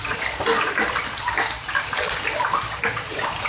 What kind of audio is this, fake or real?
real